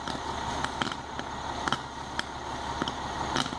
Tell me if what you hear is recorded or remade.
recorded